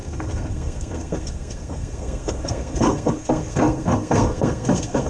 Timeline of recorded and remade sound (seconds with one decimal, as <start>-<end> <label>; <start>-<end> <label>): 0.0-5.1 remade